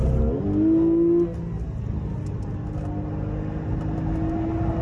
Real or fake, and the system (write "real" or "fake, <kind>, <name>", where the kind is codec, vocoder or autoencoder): real